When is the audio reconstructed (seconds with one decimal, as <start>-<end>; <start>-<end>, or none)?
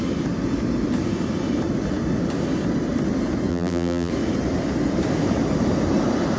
3.5-4.1